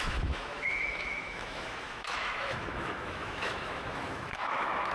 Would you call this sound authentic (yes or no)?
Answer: no